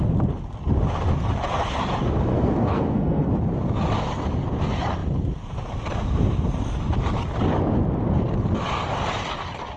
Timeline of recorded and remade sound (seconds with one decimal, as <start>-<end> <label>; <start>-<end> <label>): 0.0-2.3 recorded; 2.3-3.3 remade; 3.3-9.8 recorded